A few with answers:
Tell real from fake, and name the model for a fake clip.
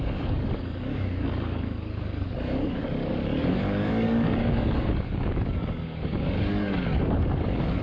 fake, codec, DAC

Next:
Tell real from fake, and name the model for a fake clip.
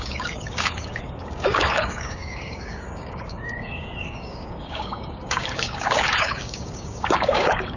fake, codec, DAC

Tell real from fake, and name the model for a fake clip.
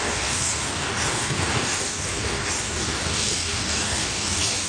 fake, codec, DAC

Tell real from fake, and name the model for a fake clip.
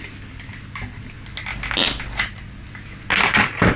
real